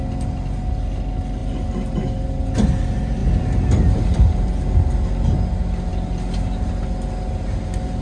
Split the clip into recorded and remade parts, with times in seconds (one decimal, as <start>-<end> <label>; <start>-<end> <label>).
0.0-3.2 recorded; 3.2-4.5 remade; 4.5-8.0 recorded